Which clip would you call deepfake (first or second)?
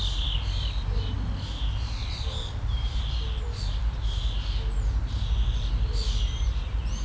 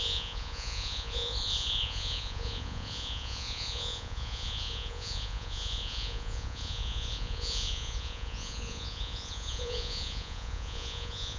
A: second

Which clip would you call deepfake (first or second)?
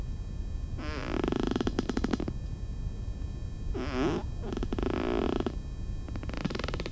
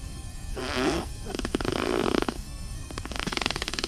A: second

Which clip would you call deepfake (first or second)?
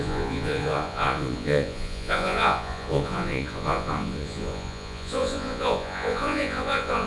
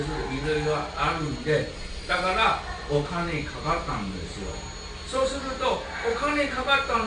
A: first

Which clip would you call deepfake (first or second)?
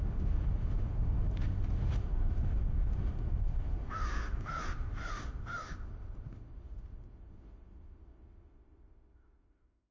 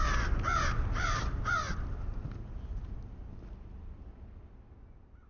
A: first